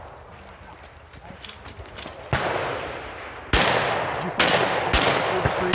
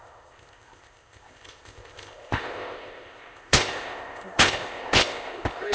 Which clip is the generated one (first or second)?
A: second